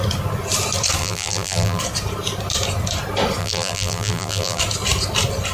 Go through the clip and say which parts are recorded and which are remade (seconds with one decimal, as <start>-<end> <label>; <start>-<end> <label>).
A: 0.0-1.0 recorded; 1.0-1.8 remade; 1.8-3.4 recorded; 3.4-4.6 remade; 4.6-5.5 recorded